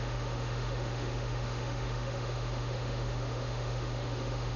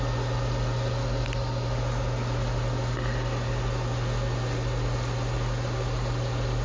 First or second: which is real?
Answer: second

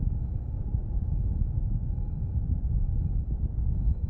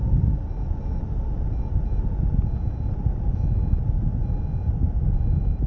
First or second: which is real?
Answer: second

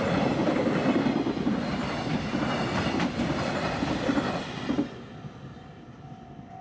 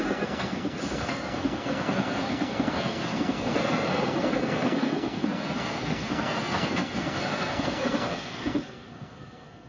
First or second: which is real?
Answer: first